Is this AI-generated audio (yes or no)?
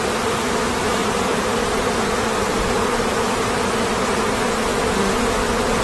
no